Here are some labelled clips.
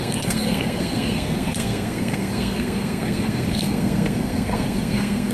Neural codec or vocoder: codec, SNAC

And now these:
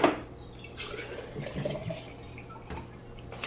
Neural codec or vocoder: none